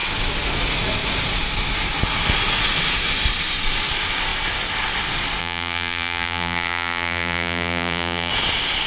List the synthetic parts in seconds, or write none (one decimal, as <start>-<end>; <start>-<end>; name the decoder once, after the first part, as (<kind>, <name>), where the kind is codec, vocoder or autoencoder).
5.4-8.3 (vocoder, BigVGAN v2)

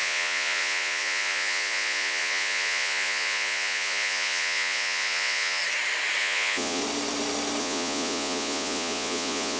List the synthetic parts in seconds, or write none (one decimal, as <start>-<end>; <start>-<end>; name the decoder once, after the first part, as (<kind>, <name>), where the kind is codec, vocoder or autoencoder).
0.0-5.6 (vocoder, Vocos); 6.2-6.8; 7.6-9.6

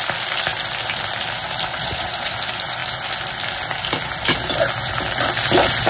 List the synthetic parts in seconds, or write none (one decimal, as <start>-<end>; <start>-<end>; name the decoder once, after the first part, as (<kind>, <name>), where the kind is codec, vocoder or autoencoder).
1.7-2.3 (vocoder, Vocos)

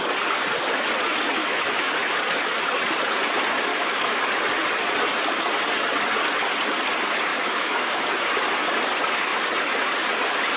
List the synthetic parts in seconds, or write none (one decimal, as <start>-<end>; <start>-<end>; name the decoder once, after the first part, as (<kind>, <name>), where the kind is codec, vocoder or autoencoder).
1.4-1.9 (autoencoder, DAC-VAE); 3.7-4.2; 7.3-8.0

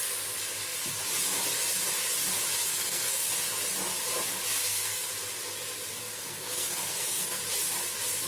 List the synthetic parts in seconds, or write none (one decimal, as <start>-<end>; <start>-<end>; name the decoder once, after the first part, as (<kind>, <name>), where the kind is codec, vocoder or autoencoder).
2.7-3.3 (codec, SNAC); 4.6-5.1; 6.0-7.4

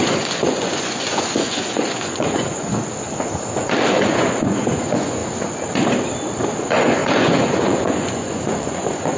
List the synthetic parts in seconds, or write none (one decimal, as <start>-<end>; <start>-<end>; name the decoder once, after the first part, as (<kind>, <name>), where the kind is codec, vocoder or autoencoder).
0.0-2.7 (vocoder, Vocos); 3.9-5.2; 6.6-9.2